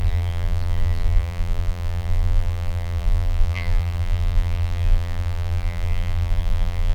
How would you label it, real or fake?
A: fake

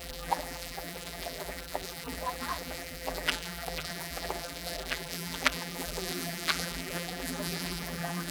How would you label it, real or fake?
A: fake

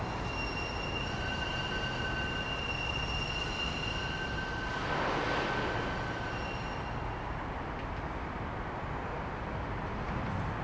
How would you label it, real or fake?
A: real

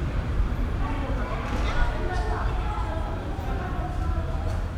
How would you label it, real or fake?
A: fake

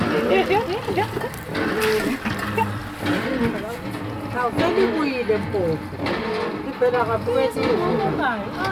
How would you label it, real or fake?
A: real